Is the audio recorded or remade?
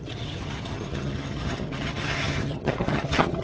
remade